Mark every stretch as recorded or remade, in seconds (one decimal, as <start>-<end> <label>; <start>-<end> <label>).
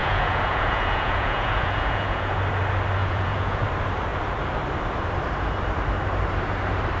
0.0-2.4 remade; 2.4-3.0 recorded; 3.0-3.6 remade; 3.6-7.0 recorded